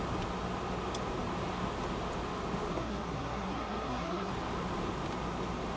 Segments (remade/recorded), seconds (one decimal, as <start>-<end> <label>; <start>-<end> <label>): 0.0-2.7 recorded; 2.7-4.3 remade; 4.3-5.8 recorded